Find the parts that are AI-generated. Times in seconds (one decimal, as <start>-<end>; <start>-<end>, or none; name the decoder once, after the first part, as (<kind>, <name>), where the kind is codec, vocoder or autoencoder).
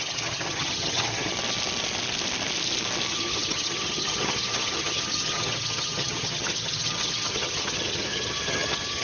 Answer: 0.0-1.3 (vocoder, HiFi-GAN); 3.1-9.0